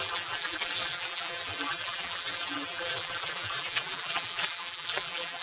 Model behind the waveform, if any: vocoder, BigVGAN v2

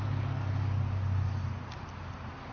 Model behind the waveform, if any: none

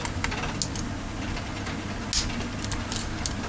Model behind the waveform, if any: none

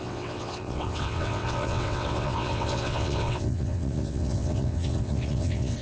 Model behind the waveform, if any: vocoder, WaveNeXt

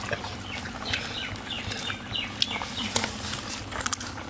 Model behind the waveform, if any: none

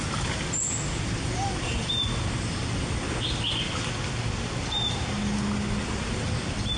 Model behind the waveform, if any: none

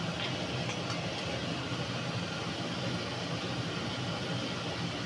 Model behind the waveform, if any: none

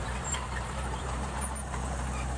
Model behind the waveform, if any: vocoder, BigVGAN v2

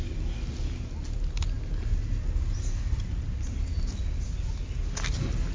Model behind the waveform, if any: none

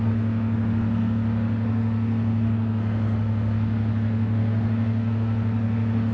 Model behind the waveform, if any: codec, SNAC